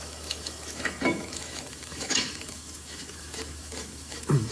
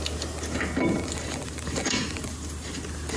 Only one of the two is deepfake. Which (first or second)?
first